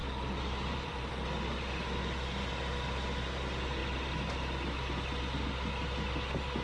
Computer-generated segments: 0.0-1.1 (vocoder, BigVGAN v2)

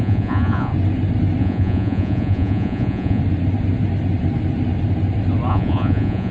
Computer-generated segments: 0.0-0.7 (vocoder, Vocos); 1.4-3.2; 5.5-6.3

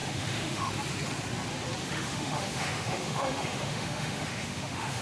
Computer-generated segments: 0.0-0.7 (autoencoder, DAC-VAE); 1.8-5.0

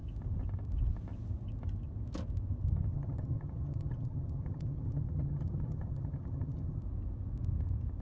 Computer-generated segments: 2.9-6.8 (vocoder, HiFi-GAN)

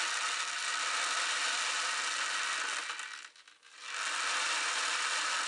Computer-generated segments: none

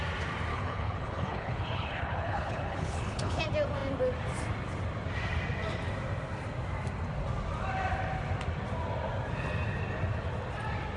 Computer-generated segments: 0.5-3.4 (codec, HILCodec)